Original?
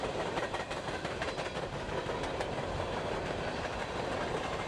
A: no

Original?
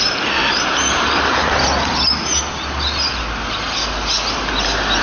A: yes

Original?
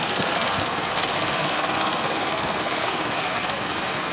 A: no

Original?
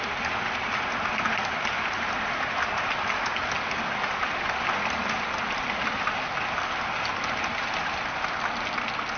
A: yes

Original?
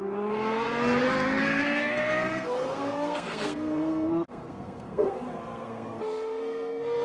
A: no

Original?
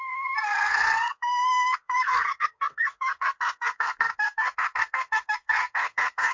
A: no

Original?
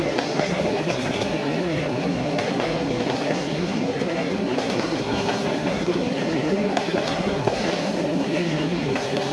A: no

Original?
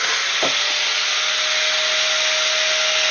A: yes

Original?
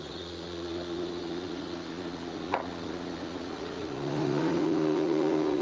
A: no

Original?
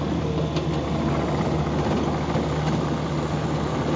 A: yes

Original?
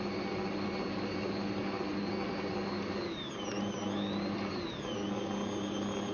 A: yes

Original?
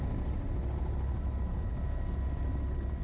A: yes